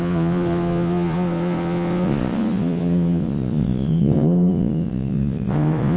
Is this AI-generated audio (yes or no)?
yes